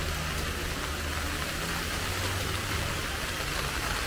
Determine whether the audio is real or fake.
real